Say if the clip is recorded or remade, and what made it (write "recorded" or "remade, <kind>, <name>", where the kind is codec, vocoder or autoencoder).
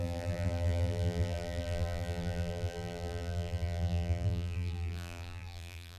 remade, vocoder, BigVGAN v2